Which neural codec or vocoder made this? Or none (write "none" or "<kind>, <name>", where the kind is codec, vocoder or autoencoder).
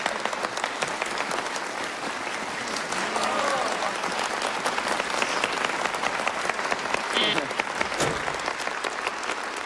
none